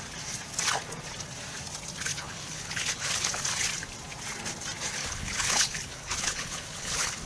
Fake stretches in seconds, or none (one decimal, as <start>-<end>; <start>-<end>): 2.1-3.3; 5.0-7.3